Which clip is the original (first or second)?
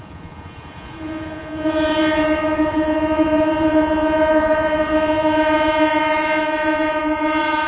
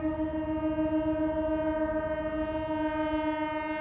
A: second